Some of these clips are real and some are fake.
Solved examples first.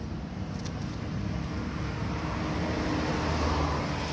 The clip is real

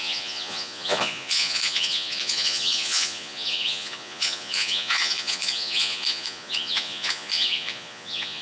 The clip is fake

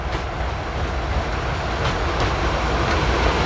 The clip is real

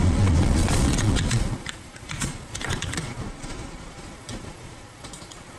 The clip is fake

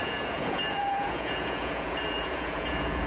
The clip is fake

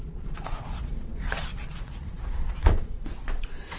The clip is fake